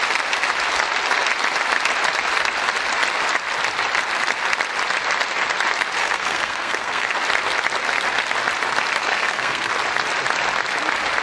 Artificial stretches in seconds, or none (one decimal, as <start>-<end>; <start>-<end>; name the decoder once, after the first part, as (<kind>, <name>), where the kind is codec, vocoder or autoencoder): 6.0-7.1 (codec, SNAC); 9.0-9.7